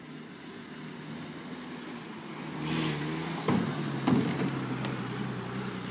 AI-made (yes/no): no